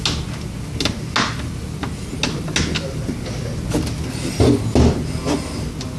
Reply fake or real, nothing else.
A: real